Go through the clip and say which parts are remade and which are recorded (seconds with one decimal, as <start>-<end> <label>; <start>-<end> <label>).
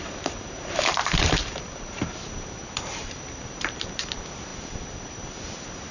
0.0-5.9 remade